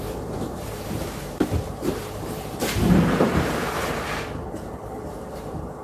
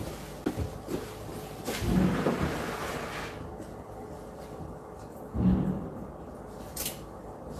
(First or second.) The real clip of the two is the second